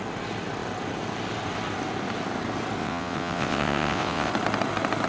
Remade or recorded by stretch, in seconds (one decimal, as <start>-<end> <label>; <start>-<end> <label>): 0.0-2.8 recorded; 2.8-4.3 remade; 4.3-5.1 recorded